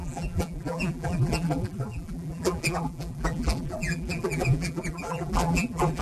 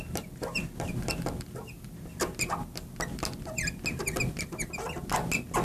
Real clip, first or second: second